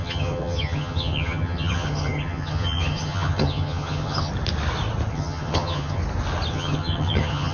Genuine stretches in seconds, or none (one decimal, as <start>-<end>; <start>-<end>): 4.3-5.1; 6.0-6.5